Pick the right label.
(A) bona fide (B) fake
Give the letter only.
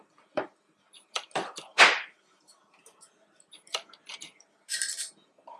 B